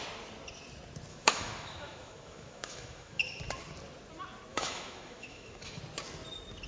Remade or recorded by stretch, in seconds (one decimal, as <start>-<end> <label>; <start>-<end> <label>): 0.0-1.1 recorded; 1.1-3.2 remade; 3.2-4.5 recorded; 4.5-5.8 remade; 5.8-6.7 recorded